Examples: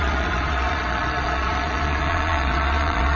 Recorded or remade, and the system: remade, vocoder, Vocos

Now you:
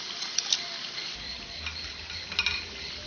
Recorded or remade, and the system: recorded